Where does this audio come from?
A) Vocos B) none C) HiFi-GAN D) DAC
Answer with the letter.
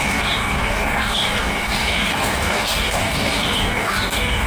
D